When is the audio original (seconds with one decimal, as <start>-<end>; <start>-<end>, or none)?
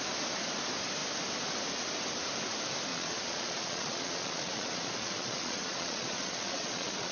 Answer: 0.0-2.9